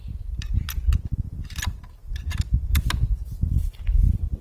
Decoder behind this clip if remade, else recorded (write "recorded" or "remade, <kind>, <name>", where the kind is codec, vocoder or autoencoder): remade, vocoder, BigVGAN v2